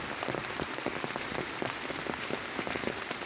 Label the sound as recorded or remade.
recorded